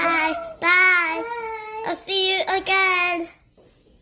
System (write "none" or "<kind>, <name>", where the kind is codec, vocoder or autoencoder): none